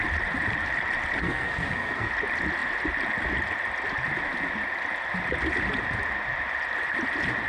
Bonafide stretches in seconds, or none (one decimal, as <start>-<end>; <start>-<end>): 0.0-1.2; 2.1-7.5